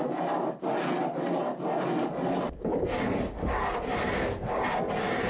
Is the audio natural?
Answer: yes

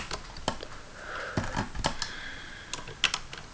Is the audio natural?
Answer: yes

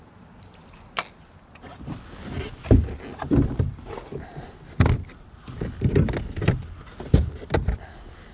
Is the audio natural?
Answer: yes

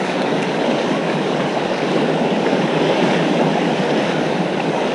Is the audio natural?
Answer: no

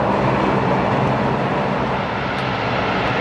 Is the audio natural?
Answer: yes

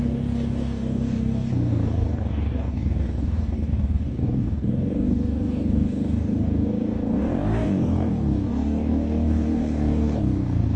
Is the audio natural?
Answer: no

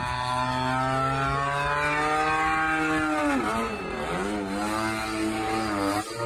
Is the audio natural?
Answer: yes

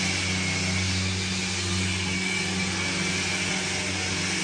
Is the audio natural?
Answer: yes